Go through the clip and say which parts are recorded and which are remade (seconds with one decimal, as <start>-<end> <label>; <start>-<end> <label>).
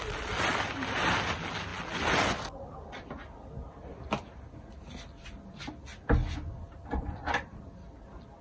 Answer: 0.0-8.4 recorded